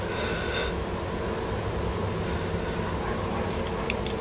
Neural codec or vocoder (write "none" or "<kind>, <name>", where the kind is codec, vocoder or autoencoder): none